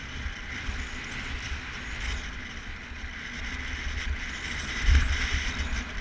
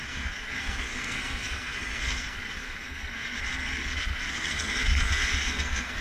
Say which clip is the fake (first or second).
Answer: second